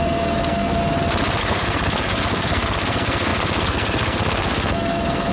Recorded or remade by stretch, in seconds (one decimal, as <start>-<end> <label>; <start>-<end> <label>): 0.0-0.8 remade; 0.8-1.4 recorded; 1.4-5.3 remade